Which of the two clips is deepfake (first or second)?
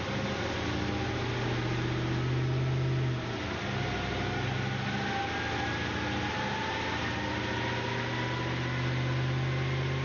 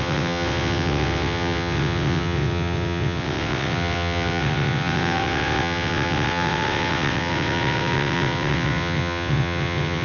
second